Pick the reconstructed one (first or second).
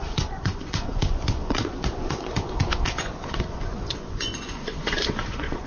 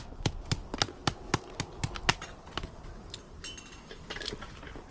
first